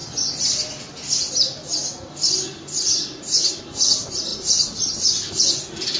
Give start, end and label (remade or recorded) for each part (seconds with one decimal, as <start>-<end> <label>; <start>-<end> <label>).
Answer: 0.0-6.0 recorded

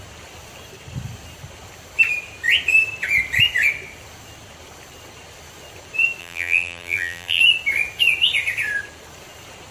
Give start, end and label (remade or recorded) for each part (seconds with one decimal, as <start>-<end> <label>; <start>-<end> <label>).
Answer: 0.0-6.2 recorded; 6.2-7.4 remade; 7.4-9.7 recorded

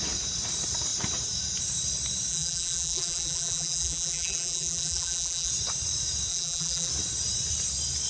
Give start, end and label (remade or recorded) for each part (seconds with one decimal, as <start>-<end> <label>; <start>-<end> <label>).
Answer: 0.0-2.3 recorded; 2.3-5.5 remade; 5.5-6.3 recorded; 6.3-6.9 remade; 6.9-8.1 recorded

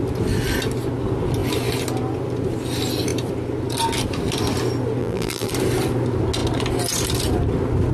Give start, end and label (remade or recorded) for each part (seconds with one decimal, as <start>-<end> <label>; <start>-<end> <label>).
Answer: 0.0-5.0 recorded; 5.0-5.5 remade; 5.5-7.9 recorded

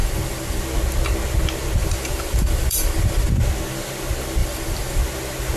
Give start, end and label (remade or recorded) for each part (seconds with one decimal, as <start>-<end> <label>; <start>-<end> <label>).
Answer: 0.0-0.6 remade; 0.6-1.8 recorded; 1.8-3.3 remade; 3.3-4.4 recorded; 4.4-5.0 remade; 5.0-5.6 recorded

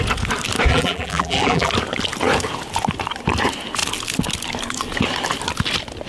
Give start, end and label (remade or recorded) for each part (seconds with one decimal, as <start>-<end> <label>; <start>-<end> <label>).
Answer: 0.0-0.7 recorded; 0.7-1.7 remade; 1.7-6.1 recorded

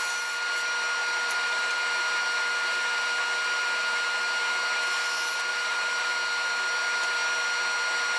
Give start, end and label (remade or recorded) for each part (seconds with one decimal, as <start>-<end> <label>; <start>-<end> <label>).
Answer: 0.0-5.5 recorded; 5.5-6.1 remade; 6.1-8.2 recorded

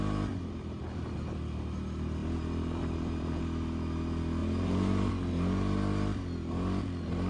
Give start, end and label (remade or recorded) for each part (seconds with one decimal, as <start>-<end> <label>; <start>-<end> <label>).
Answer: 0.0-2.2 recorded; 2.2-3.4 remade; 3.4-4.4 recorded; 4.4-5.1 remade; 5.1-7.3 recorded